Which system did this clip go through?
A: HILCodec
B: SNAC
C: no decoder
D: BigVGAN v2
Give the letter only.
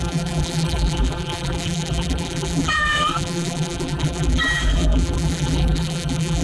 D